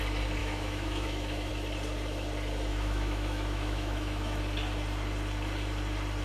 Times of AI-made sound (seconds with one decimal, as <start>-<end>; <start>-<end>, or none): 0.4-1.5; 2.7-4.4